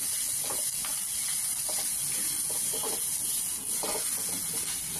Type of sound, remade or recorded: recorded